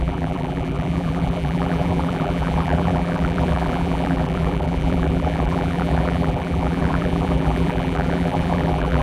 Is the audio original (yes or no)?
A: no